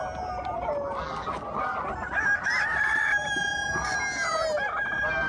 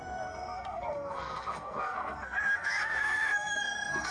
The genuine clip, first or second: first